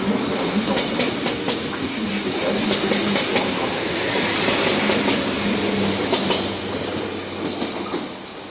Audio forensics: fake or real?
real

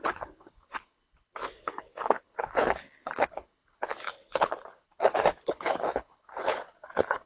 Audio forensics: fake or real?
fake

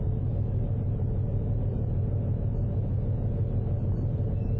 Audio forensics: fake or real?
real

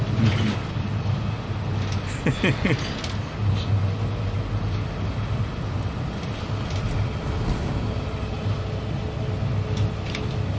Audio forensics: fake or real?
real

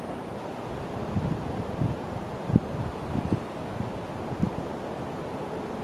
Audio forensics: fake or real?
real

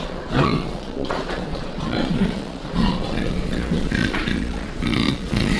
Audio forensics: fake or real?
fake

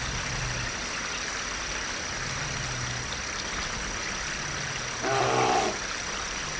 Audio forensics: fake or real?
real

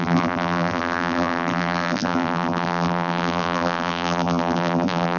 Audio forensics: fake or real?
fake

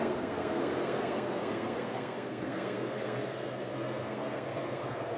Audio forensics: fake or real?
fake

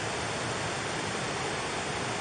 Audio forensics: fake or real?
real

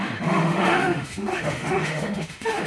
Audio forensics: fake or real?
fake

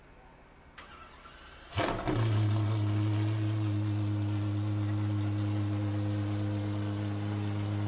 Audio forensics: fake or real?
real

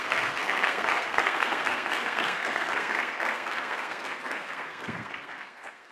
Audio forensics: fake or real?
fake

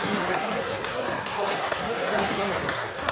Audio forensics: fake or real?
fake